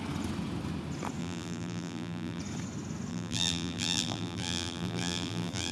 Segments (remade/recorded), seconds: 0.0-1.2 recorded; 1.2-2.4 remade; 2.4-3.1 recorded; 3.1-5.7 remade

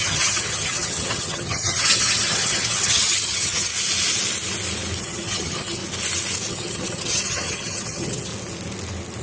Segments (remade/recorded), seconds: 0.0-3.7 remade; 3.7-5.0 recorded; 5.0-5.8 remade; 5.8-6.5 recorded; 6.5-8.3 remade; 8.3-9.2 recorded

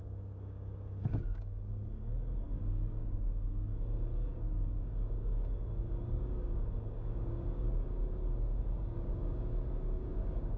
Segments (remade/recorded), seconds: 0.0-10.6 remade

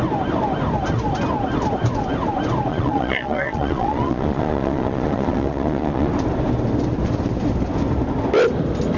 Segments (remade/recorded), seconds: 0.0-2.7 recorded; 2.7-6.1 remade; 6.1-9.0 recorded

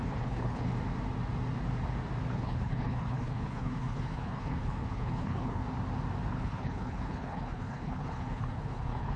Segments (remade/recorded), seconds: 0.0-0.7 remade; 0.7-2.3 recorded; 2.3-5.6 remade; 5.6-6.3 recorded; 6.3-9.2 remade

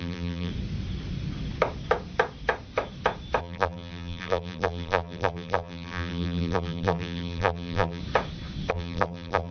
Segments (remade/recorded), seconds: 0.0-0.5 remade; 0.5-3.4 recorded; 3.4-8.0 remade; 8.0-8.7 recorded; 8.7-9.5 remade

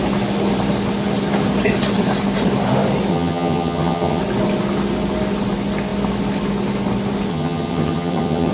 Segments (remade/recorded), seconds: 0.0-3.1 recorded; 3.1-4.2 remade; 4.2-7.3 recorded; 7.3-8.5 remade